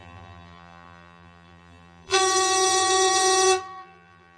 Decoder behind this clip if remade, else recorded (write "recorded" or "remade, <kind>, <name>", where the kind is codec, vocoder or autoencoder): remade, vocoder, BigVGAN v2